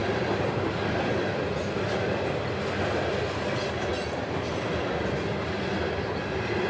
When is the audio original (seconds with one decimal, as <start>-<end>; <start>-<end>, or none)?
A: 2.1-3.9; 5.7-6.7